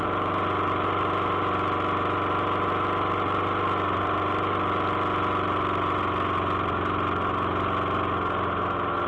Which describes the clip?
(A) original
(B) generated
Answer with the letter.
A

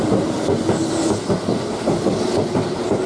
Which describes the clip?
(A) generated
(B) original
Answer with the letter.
B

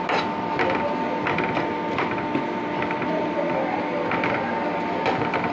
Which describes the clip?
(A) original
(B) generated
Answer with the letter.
A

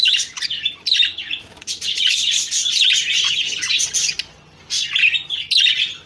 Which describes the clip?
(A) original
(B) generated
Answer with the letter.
A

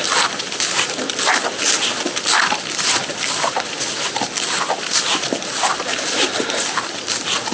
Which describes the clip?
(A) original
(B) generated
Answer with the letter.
A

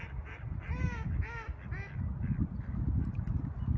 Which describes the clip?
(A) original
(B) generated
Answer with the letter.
A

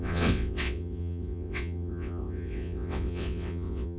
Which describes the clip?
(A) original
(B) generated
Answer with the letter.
B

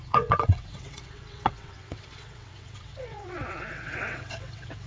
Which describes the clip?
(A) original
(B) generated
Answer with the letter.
B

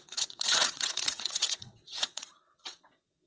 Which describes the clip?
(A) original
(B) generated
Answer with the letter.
B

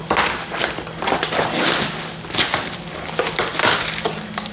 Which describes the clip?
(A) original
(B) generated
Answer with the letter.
A